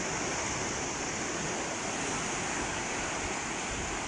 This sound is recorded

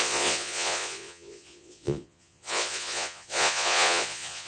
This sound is remade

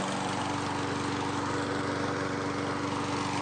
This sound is recorded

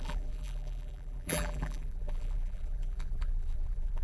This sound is remade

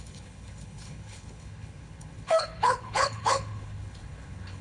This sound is remade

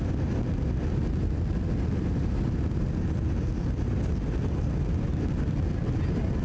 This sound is recorded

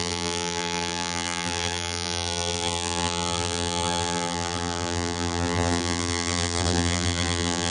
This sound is remade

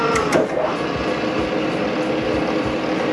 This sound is recorded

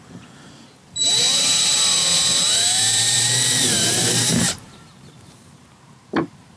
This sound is remade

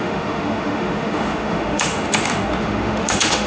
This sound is remade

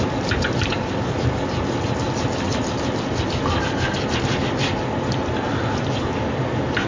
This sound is recorded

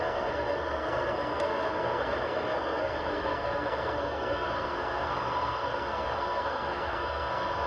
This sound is remade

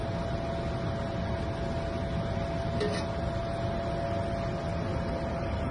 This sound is recorded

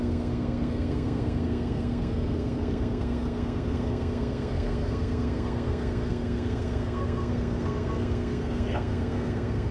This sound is remade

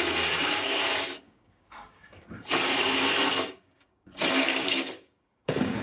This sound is remade